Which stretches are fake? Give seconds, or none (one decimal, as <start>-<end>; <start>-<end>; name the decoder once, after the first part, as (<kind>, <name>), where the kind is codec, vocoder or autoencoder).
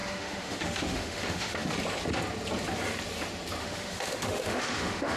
0.0-1.7 (autoencoder, DAC-VAE); 3.6-5.2